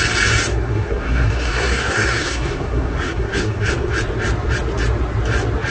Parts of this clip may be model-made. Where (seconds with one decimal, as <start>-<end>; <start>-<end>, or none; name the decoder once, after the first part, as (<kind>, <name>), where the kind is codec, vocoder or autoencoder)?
0.5-3.9 (codec, SNAC)